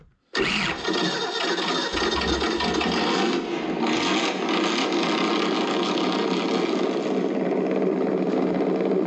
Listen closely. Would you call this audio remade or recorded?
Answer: recorded